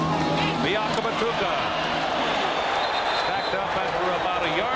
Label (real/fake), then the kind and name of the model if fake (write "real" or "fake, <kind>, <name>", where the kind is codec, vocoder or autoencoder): real